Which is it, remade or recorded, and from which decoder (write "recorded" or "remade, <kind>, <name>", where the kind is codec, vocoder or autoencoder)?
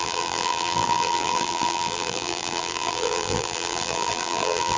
remade, vocoder, BigVGAN v2